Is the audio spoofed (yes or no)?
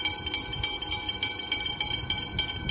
no